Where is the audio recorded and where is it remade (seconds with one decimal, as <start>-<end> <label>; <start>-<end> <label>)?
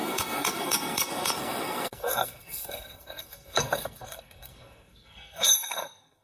0.0-6.2 remade